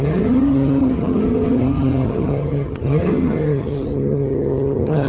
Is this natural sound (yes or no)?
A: no